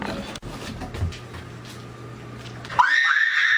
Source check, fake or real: real